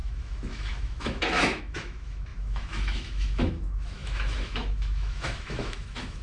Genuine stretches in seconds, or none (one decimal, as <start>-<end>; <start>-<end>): none